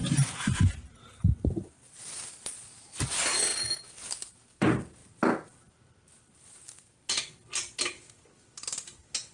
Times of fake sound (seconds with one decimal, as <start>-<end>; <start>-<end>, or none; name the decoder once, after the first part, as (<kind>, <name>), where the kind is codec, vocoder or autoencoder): none